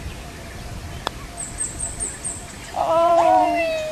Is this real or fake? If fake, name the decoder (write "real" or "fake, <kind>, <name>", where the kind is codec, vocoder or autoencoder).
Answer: fake, vocoder, BigVGAN v2